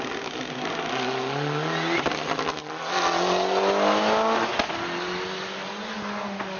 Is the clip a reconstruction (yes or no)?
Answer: no